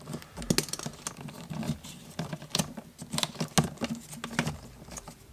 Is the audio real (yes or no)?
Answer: yes